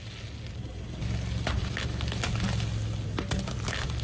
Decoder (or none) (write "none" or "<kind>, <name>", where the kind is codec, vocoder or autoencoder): none